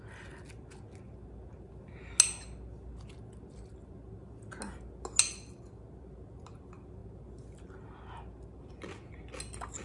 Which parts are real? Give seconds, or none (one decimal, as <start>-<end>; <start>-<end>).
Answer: 0.0-9.8